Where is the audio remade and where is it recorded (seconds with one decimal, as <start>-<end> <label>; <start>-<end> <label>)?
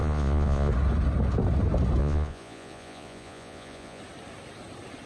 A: 0.0-0.7 remade; 0.7-2.0 recorded; 2.0-4.0 remade; 4.0-5.1 recorded